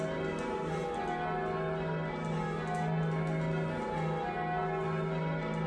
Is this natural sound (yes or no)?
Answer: yes